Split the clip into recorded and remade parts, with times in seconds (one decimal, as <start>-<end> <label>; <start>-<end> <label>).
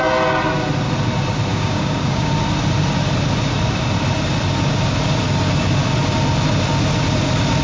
0.0-1.5 recorded; 1.5-2.3 remade; 2.3-7.6 recorded